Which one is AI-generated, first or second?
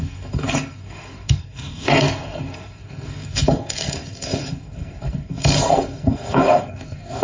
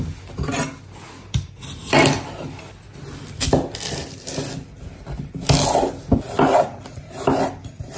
first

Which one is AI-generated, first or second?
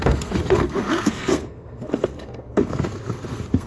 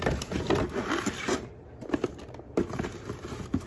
first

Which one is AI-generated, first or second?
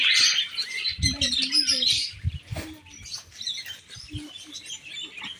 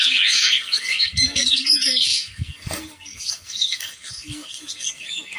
second